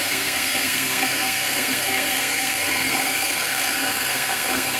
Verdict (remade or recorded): remade